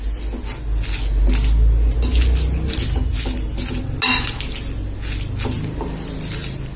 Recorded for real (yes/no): yes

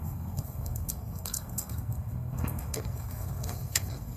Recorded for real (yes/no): no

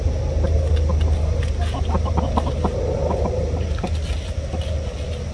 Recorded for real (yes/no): yes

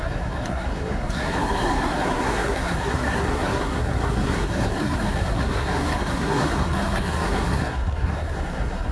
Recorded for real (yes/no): no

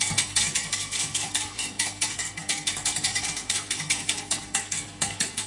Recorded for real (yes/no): no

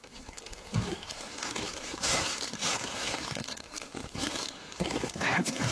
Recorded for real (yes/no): no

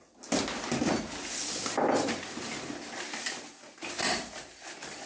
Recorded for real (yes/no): yes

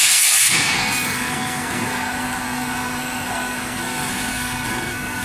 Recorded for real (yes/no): no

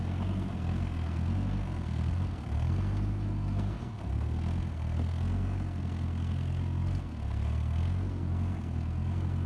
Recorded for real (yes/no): no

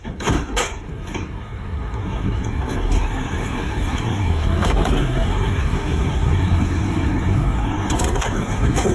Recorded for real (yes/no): no